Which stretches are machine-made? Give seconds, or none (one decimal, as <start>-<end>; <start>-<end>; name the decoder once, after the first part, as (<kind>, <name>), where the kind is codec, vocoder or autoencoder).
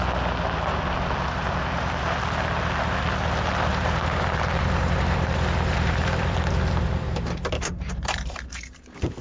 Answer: 3.7-9.2 (vocoder, BigVGAN v2)